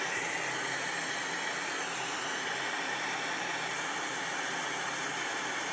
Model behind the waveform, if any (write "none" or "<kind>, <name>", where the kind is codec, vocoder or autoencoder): none